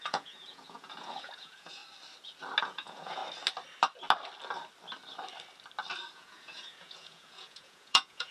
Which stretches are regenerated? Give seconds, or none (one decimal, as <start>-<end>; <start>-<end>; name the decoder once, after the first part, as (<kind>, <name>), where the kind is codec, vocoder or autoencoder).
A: 0.0-1.8 (vocoder, Vocos); 2.6-3.2; 6.1-8.3